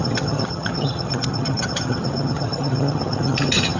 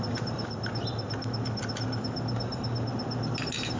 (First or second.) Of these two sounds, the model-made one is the first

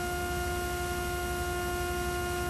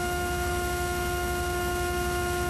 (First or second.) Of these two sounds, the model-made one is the second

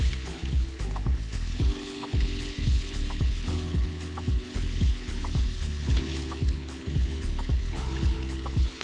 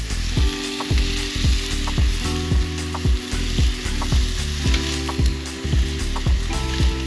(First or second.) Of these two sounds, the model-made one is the first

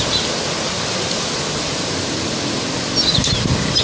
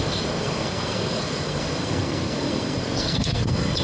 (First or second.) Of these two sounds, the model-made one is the second